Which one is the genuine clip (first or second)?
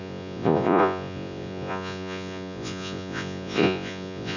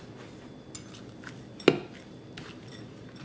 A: second